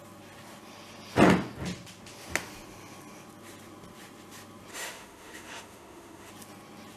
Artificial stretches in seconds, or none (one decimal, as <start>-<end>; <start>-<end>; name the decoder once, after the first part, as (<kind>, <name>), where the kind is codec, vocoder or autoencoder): 4.7-6.3 (autoencoder, DAC-VAE)